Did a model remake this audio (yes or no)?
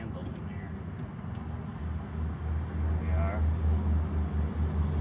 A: no